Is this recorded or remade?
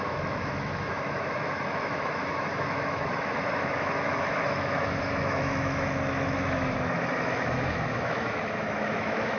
remade